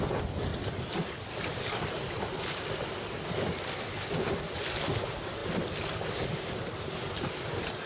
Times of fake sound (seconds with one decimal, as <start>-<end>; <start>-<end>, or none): none